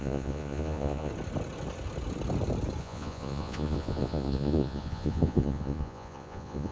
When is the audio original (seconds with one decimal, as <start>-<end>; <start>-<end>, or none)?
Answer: 1.1-2.8